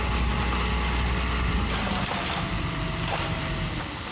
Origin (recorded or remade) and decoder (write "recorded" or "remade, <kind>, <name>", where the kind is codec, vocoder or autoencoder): recorded